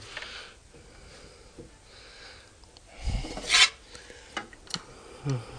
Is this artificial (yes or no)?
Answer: no